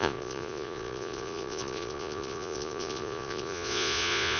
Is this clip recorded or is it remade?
remade